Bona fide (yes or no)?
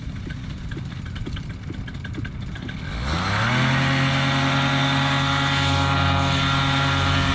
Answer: yes